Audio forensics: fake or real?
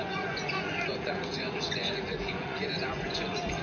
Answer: fake